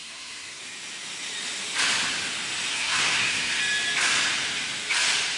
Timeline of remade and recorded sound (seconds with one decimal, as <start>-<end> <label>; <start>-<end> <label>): 0.0-0.6 remade; 0.6-2.7 recorded; 2.7-3.6 remade; 3.6-5.4 recorded